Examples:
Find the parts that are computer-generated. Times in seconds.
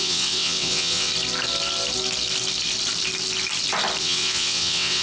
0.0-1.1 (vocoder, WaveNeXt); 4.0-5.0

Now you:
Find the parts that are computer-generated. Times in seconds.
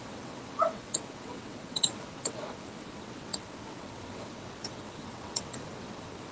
0.0-6.3 (vocoder, WaveNeXt)